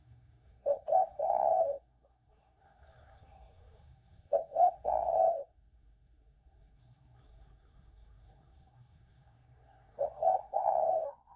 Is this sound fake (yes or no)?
yes